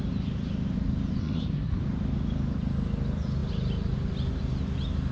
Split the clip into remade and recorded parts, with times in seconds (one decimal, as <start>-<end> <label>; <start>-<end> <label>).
0.0-1.2 recorded; 1.2-1.8 remade; 1.8-5.1 recorded